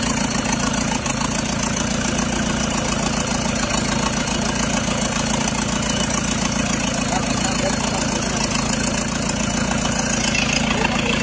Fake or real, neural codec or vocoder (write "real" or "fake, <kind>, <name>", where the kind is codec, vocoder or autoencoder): fake, vocoder, BigVGAN v2